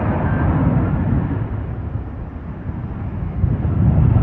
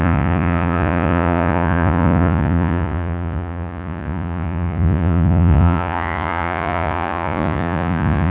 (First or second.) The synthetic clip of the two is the second